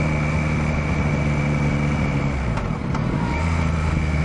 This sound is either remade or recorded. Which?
recorded